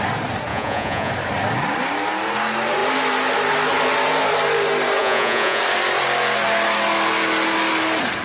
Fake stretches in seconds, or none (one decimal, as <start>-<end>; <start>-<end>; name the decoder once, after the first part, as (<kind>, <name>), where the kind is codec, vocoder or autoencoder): 0.5-1.1 (vocoder, Vocos); 5.0-5.6